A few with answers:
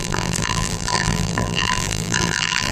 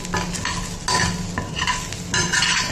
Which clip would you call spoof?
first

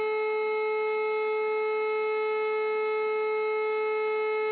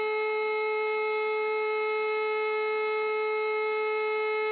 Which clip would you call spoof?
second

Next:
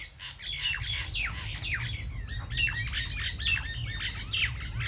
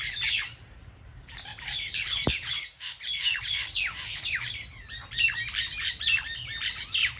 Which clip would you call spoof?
second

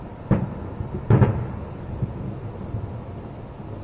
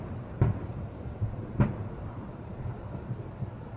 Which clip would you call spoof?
second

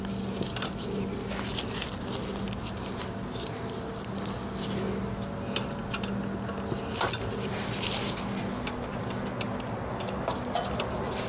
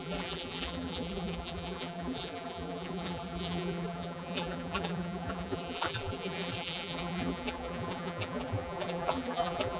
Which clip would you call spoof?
second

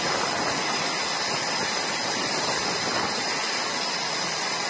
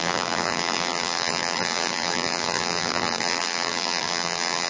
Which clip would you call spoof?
second